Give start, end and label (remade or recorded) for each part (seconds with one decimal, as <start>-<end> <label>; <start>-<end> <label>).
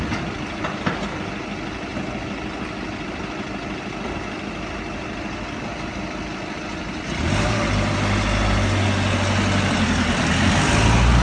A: 0.0-11.2 recorded